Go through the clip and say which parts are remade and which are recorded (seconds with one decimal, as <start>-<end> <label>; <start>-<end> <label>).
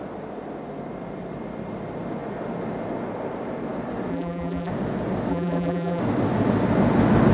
0.0-4.1 recorded; 4.1-4.7 remade; 4.7-5.3 recorded; 5.3-6.0 remade; 6.0-7.3 recorded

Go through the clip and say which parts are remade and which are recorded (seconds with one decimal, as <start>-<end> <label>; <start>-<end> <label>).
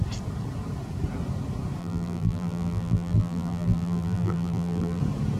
0.0-1.8 recorded; 1.8-5.0 remade; 5.0-5.4 recorded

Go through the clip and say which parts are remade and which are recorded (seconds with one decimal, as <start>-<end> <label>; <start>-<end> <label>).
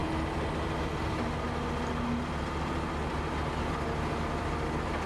0.0-5.1 recorded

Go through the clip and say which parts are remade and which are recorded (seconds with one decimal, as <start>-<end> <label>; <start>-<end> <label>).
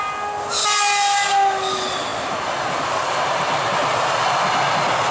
0.0-5.1 recorded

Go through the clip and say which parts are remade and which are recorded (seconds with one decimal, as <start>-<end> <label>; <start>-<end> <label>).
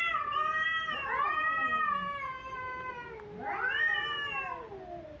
0.0-5.2 recorded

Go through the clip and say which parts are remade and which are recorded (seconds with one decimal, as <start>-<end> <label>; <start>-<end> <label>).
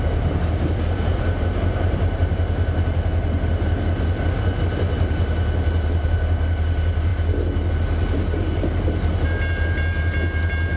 0.0-10.8 recorded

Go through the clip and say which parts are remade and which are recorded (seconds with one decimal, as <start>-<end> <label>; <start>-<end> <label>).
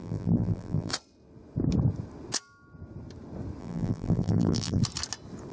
0.0-0.9 remade; 0.9-3.6 recorded; 3.6-4.8 remade; 4.8-5.5 recorded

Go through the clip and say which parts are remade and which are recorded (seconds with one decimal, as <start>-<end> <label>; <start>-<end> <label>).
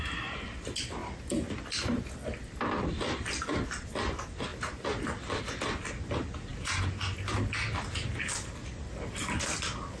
0.0-2.2 recorded; 2.2-3.9 remade; 3.9-10.0 recorded